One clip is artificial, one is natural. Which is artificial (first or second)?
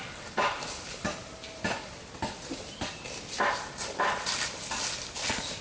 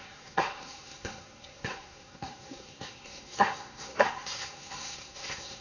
second